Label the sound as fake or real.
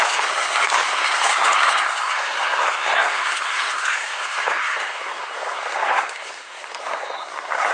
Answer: fake